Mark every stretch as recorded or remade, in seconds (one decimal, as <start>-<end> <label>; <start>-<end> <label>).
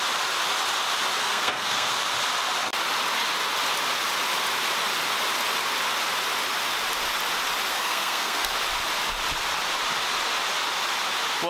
0.0-1.2 recorded; 1.2-1.9 remade; 1.9-7.7 recorded; 7.7-8.5 remade; 8.5-11.5 recorded